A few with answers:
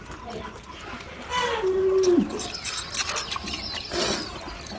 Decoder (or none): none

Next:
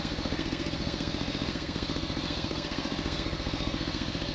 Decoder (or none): codec, SNAC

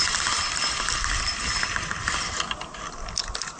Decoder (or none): none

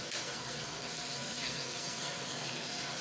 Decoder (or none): codec, SNAC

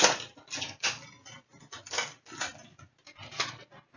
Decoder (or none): none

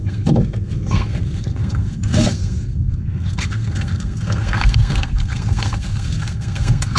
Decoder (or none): codec, SNAC